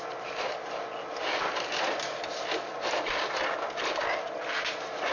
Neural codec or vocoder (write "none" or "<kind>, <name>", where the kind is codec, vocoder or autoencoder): none